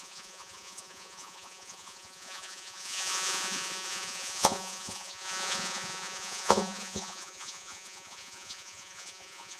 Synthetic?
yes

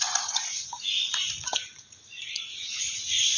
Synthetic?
yes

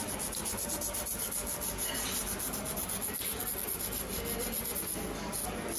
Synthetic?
no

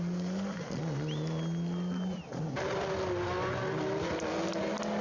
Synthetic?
no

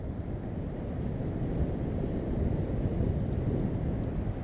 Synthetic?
no